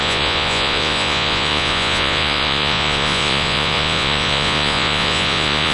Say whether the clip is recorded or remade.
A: remade